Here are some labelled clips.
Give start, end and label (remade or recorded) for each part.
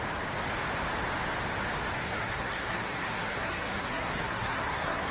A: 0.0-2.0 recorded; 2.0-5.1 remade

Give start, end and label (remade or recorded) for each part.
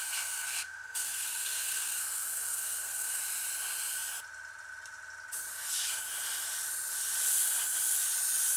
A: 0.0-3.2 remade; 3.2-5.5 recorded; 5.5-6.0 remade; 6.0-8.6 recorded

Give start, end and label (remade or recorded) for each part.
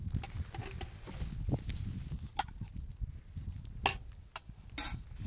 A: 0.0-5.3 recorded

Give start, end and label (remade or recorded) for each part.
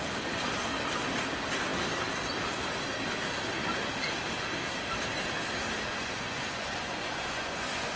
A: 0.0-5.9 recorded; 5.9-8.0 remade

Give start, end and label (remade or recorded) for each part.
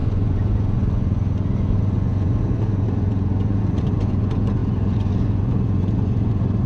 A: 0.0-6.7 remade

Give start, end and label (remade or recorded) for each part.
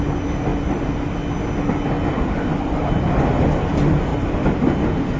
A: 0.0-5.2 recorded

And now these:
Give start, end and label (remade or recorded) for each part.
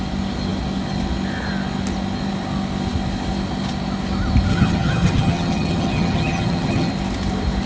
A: 0.0-4.5 recorded; 4.5-6.9 remade; 6.9-7.7 recorded